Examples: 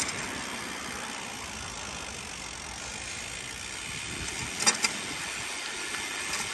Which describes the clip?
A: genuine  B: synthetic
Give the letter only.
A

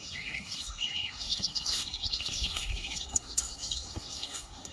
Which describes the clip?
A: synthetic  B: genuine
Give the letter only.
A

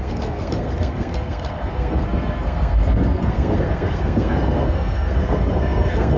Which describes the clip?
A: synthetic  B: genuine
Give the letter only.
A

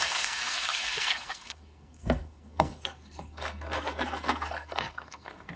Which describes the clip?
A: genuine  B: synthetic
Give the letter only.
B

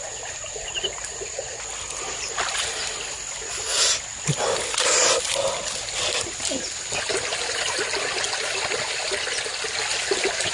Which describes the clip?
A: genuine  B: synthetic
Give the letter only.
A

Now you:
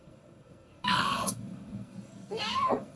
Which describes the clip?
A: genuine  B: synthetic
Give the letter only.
B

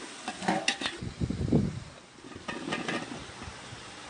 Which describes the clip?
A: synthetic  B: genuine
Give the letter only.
B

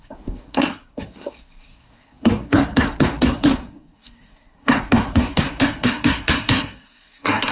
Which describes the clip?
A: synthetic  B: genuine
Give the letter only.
A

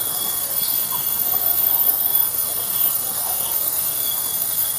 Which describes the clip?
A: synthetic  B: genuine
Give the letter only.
A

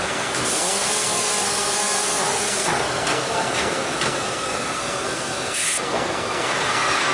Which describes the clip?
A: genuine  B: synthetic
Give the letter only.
B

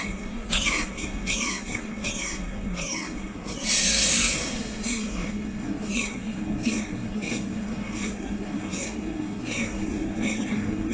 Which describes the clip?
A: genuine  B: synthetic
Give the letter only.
B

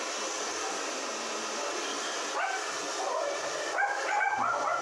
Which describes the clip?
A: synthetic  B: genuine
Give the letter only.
B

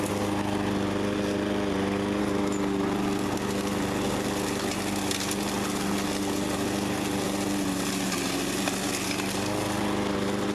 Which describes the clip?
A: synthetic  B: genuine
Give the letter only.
B